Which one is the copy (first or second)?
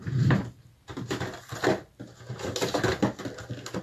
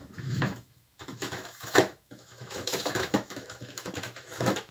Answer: second